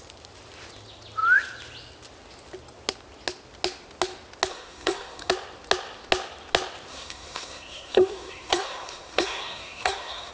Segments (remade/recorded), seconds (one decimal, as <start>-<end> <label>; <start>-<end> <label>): 0.0-4.5 recorded; 4.5-5.3 remade; 5.3-6.9 recorded; 6.9-10.3 remade